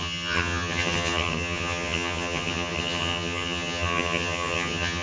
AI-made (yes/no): yes